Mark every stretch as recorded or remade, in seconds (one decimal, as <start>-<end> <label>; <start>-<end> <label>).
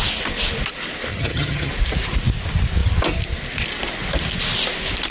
0.0-1.1 recorded; 1.1-1.7 remade; 1.7-5.1 recorded